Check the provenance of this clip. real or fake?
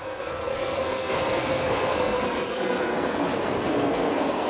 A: fake